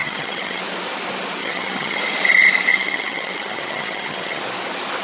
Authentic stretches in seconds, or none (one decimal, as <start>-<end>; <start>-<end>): 0.6-1.4; 2.0-2.7; 4.4-5.0